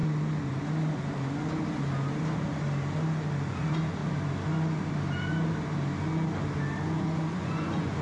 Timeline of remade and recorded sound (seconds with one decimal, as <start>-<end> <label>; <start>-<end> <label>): 0.0-3.5 recorded; 3.5-4.0 remade; 4.0-7.0 recorded; 7.0-8.0 remade